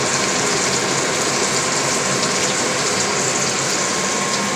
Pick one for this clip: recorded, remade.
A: recorded